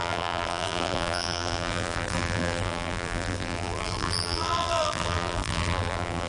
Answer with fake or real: fake